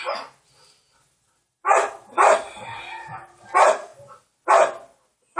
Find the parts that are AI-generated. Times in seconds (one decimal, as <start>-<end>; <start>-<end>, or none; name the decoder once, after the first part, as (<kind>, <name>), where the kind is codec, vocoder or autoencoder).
none